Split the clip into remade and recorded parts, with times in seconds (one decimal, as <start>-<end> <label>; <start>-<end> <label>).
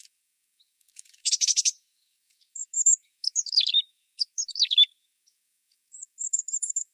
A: 0.0-6.9 remade